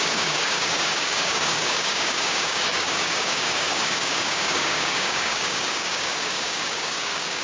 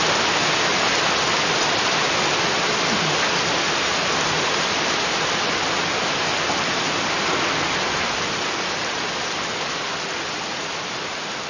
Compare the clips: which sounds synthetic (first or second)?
first